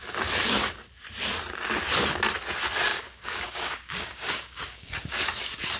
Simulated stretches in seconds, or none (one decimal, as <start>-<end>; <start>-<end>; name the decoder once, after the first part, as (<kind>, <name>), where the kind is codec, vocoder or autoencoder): 2.9-4.9 (codec, DAC)